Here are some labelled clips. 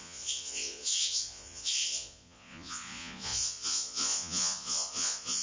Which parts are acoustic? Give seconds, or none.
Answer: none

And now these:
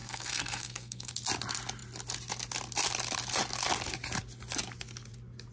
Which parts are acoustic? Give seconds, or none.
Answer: 1.1-5.5

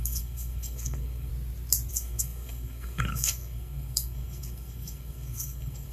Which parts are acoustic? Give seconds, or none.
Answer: 1.3-1.9

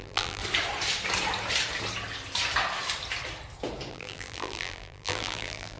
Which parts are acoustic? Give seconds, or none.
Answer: 0.4-3.9

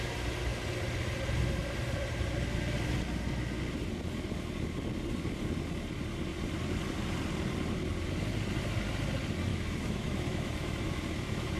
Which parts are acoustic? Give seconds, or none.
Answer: 0.0-9.5

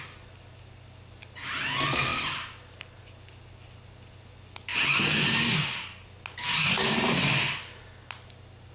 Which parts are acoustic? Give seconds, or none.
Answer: 0.0-8.7